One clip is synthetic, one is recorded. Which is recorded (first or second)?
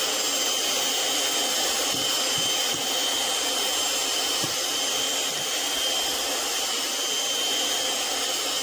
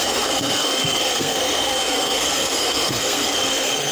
first